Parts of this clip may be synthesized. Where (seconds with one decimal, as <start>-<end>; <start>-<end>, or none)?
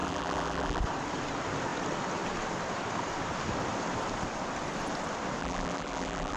0.0-0.8; 5.4-6.4